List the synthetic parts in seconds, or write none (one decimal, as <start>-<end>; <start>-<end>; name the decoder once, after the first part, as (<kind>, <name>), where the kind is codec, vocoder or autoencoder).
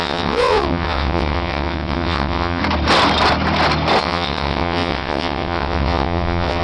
0.0-2.6 (vocoder, WaveNeXt); 4.0-6.6